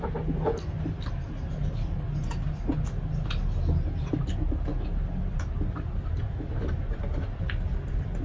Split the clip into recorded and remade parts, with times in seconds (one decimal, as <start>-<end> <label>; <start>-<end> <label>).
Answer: 0.0-8.2 recorded